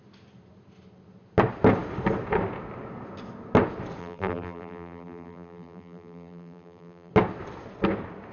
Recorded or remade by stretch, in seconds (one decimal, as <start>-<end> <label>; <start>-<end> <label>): 0.0-4.0 recorded; 4.0-7.1 remade; 7.1-8.3 recorded